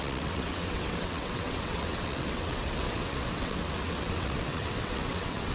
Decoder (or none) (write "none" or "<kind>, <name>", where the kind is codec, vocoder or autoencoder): vocoder, WaveNeXt